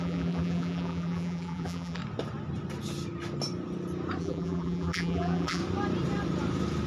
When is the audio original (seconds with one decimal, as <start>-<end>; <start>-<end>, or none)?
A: 2.0-4.2; 5.6-6.9